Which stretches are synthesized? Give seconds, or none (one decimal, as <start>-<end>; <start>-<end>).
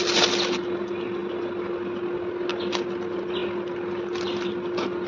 none